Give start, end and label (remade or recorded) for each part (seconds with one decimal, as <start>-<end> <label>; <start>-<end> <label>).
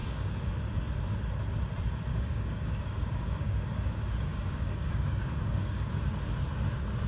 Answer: 0.0-0.6 remade; 0.6-2.1 recorded; 2.1-5.9 remade; 5.9-7.1 recorded